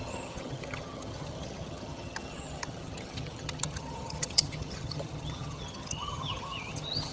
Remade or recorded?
remade